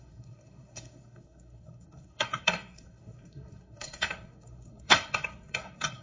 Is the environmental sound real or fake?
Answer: fake